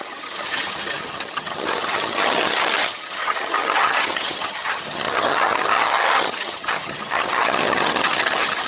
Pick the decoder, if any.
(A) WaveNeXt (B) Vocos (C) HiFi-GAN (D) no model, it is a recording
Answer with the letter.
C